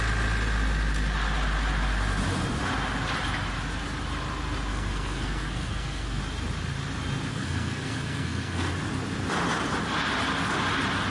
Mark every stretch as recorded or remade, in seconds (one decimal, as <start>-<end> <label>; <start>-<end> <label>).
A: 0.0-4.7 recorded; 4.7-6.2 remade; 6.2-7.3 recorded; 7.3-8.7 remade; 8.7-11.1 recorded